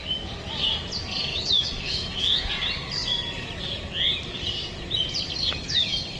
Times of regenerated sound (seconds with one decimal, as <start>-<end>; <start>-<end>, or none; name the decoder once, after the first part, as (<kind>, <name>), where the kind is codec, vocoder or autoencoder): 1.3-2.5 (autoencoder, DAC-VAE)